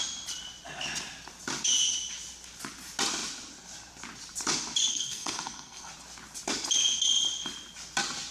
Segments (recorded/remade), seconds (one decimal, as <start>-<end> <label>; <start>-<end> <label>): 0.0-4.9 recorded; 4.9-5.9 remade; 5.9-8.3 recorded